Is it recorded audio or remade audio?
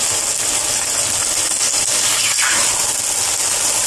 recorded